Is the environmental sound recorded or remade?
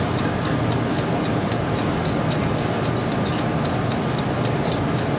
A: recorded